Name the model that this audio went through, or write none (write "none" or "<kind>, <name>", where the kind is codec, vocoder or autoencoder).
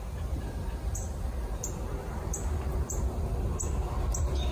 vocoder, BigVGAN v2